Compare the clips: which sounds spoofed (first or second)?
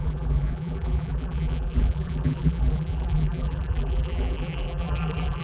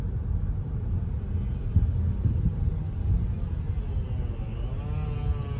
first